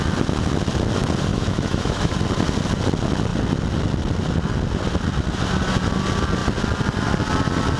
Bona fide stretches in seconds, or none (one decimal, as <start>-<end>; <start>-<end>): 0.0-1.3; 2.1-7.8